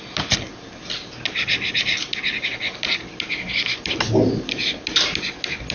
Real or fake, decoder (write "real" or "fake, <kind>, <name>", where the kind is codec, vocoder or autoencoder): real